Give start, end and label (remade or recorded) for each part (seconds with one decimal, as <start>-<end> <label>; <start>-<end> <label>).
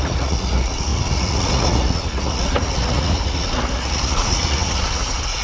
0.0-5.4 remade